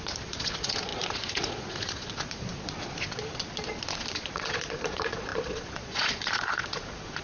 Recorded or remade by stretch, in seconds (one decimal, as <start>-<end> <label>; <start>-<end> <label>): 0.0-7.2 remade